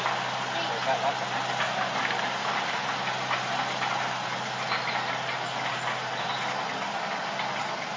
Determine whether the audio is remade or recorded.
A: recorded